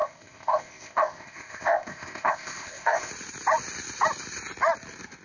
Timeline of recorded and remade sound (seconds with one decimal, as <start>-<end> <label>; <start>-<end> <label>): 0.0-3.1 remade; 3.1-5.2 recorded